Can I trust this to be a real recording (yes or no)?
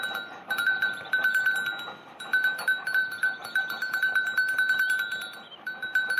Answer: no